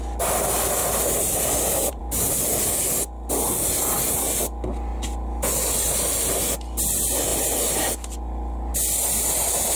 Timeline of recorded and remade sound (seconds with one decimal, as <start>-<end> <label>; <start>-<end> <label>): 0.0-0.8 recorded; 0.8-2.0 remade; 2.0-9.8 recorded